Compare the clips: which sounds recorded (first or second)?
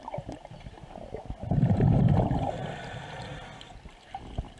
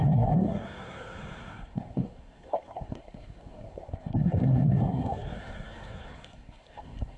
first